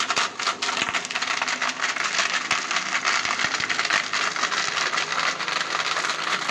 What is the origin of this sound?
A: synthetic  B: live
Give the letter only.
B